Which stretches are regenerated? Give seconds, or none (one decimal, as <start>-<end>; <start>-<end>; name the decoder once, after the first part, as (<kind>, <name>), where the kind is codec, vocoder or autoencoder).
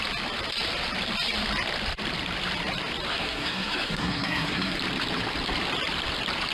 3.1-4.8 (codec, SNAC)